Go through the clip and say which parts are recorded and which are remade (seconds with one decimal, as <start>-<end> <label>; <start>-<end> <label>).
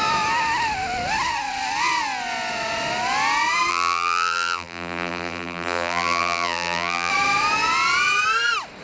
0.0-3.7 recorded; 3.7-7.1 remade; 7.1-8.8 recorded